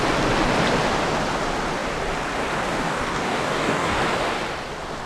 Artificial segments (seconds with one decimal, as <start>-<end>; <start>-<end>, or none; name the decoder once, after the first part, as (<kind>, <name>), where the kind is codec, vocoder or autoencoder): 2.7-4.0 (codec, DAC)